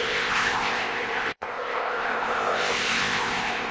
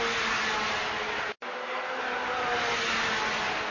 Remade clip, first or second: first